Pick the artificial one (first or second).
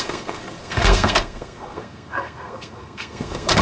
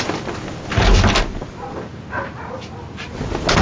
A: first